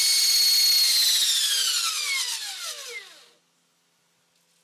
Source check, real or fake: real